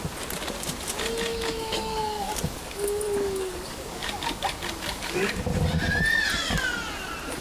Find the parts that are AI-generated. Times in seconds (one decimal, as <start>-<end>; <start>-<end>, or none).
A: 1.3-5.4